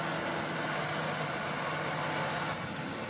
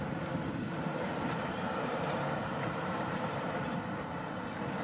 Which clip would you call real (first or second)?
first